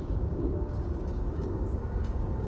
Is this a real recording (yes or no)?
no